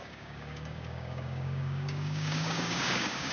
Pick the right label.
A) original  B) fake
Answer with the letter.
B